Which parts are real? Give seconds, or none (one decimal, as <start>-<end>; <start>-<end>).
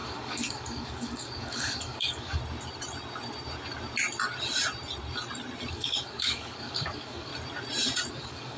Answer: 2.4-5.7; 7.3-8.1